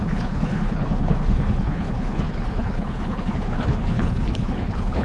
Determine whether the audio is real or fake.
fake